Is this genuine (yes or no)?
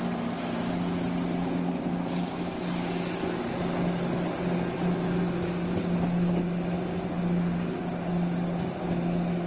yes